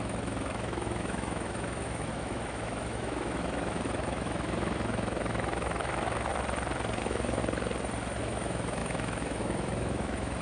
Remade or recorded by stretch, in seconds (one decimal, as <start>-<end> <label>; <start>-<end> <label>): 0.0-6.3 remade; 6.3-7.0 recorded; 7.0-7.4 remade; 7.4-8.2 recorded; 8.2-10.4 remade